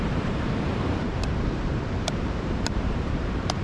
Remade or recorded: remade